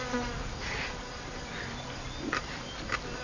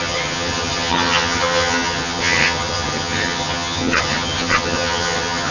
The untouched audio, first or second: first